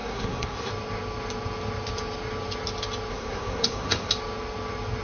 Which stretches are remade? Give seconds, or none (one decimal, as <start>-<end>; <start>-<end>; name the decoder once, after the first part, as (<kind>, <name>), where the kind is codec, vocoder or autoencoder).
0.0-0.7 (codec, SNAC); 3.1-4.1